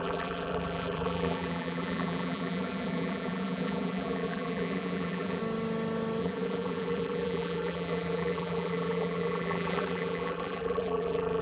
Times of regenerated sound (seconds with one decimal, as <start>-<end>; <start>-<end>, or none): 0.0-5.4; 6.2-11.4